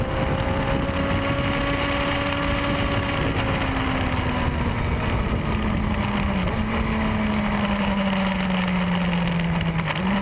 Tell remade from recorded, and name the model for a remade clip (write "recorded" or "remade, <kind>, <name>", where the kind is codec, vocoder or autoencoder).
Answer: recorded